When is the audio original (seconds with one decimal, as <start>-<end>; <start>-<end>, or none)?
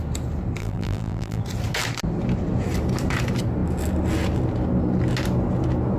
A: 0.0-0.6; 1.4-6.0